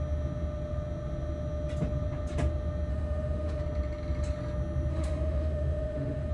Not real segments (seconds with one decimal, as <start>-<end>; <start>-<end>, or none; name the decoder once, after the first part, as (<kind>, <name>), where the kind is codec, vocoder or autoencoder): 2.9-3.6 (autoencoder, DAC-VAE); 4.9-6.3